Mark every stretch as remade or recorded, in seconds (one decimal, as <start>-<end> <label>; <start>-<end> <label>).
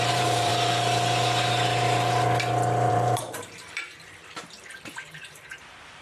0.0-0.5 remade; 0.5-2.9 recorded; 2.9-6.0 remade